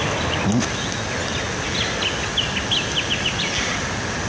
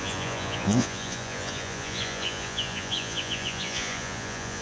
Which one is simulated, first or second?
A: second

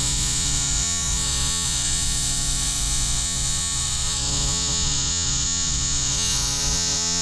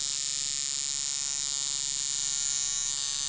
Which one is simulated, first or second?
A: first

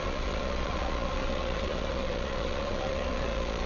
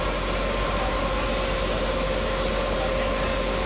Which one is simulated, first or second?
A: first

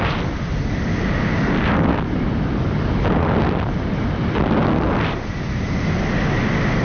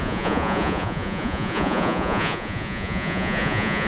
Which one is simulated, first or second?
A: second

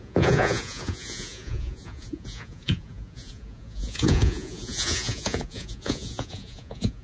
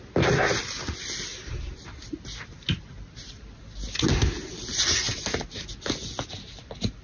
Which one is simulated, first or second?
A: first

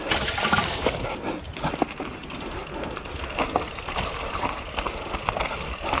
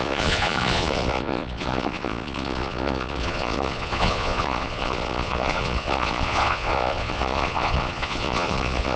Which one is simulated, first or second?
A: second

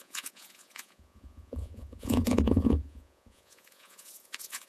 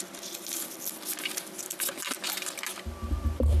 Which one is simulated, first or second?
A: first